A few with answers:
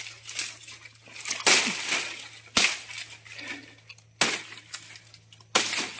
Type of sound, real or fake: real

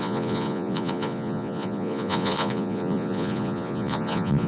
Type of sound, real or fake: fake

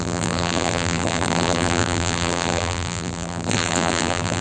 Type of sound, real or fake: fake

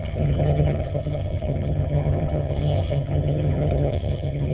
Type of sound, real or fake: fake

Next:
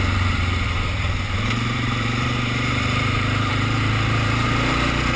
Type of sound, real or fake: fake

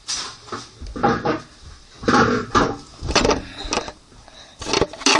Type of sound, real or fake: real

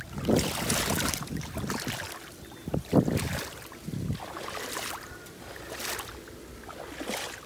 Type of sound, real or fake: real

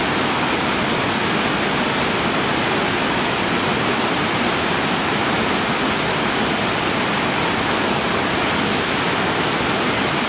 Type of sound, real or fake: real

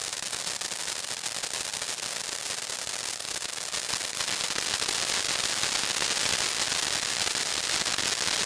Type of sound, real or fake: real